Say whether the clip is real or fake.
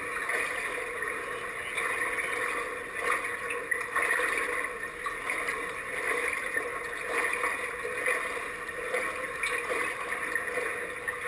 real